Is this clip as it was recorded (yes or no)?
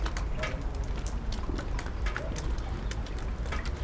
yes